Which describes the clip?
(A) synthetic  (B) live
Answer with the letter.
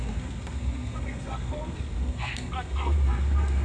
A